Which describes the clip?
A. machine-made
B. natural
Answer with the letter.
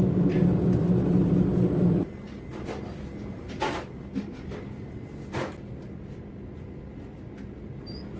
B